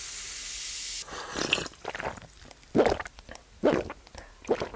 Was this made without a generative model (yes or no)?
yes